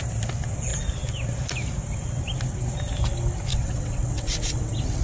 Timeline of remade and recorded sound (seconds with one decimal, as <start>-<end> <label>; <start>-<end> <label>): 0.0-3.5 recorded; 3.5-5.0 remade